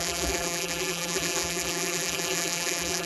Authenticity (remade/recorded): remade